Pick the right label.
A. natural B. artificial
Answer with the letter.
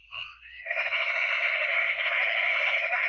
B